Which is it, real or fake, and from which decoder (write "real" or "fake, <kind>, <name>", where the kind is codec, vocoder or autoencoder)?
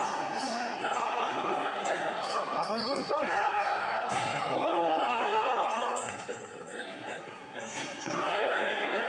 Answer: fake, codec, SNAC